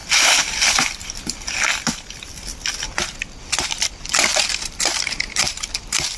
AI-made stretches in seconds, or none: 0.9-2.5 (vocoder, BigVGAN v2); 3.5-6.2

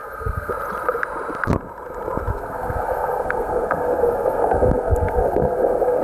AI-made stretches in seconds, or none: 0.0-0.5 (codec, SNAC); 2.3-6.0

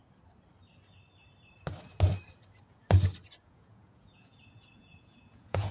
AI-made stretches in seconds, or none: 3.4-5.7 (vocoder, Vocos)

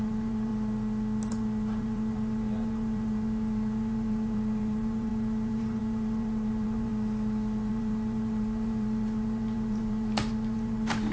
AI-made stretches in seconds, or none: 0.0-0.5 (vocoder, BigVGAN v2); 1.3-6.9; 7.7-11.1

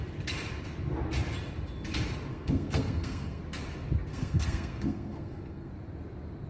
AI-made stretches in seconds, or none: 2.3-3.4 (codec, SNAC); 4.1-5.7